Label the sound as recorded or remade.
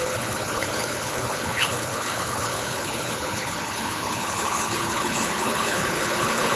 remade